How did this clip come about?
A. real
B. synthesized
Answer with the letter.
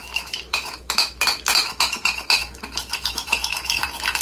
B